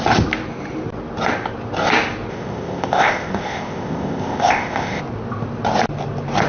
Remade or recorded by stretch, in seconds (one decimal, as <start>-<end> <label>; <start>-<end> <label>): 0.0-2.3 recorded; 2.3-5.0 remade; 5.0-6.5 recorded